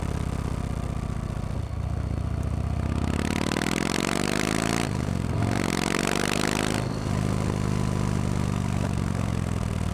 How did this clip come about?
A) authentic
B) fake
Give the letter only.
A